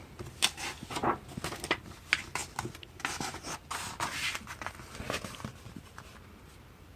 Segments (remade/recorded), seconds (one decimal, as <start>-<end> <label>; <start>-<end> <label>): 0.0-7.0 recorded